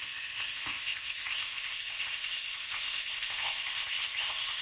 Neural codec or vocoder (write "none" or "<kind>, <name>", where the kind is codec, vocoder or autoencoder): codec, ZipCodec